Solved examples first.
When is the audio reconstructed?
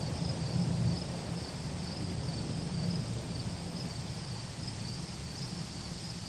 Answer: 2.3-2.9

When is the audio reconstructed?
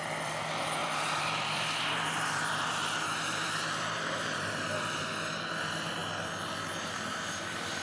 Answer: 0.0-6.0; 6.8-7.8